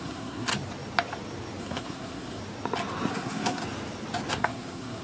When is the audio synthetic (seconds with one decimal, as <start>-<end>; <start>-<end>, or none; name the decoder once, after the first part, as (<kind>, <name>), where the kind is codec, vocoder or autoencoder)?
0.0-0.5 (codec, SNAC); 1.6-2.4; 3.1-3.6; 4.3-5.0